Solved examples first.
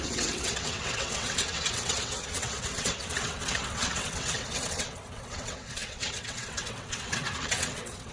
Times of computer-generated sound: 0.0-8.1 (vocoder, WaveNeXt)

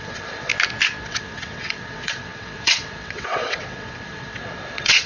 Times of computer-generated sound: 0.0-0.5 (vocoder, WaveNeXt); 1.0-5.1

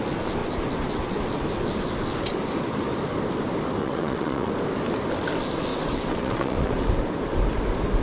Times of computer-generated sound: 3.8-4.5 (vocoder, WaveNeXt); 5.7-6.9

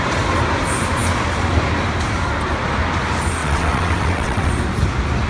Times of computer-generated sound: 3.4-4.5 (vocoder, WaveNeXt)

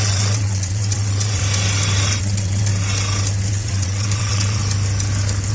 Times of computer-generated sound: 0.0-1.4 (vocoder, WaveNeXt); 2.2-2.7; 3.5-4.6

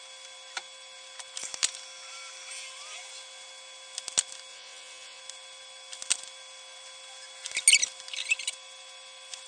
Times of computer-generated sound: 4.5-5.2 (vocoder, WaveNeXt)

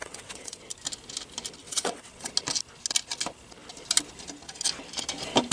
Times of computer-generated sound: 0.0-0.6 (vocoder, WaveNeXt); 1.6-2.3